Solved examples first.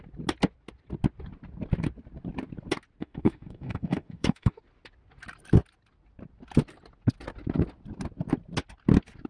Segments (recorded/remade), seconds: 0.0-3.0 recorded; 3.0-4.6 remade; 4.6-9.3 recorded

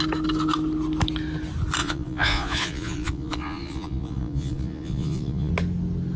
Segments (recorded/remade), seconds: 0.0-1.8 recorded; 1.8-5.5 remade; 5.5-6.2 recorded

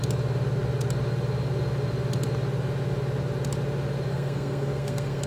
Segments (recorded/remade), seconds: 0.0-4.1 recorded; 4.1-5.3 remade

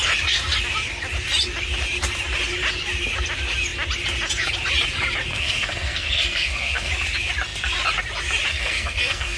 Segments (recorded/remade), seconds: 0.0-5.3 recorded; 5.3-6.9 remade; 6.9-8.5 recorded; 8.5-9.4 remade

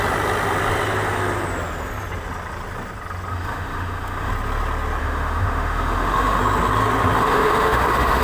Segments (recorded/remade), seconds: 0.0-3.3 recorded; 3.3-4.3 remade; 4.3-5.0 recorded; 5.0-6.4 remade; 6.4-7.2 recorded; 7.2-8.2 remade